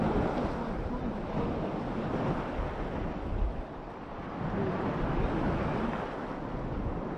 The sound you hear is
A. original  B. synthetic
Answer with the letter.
A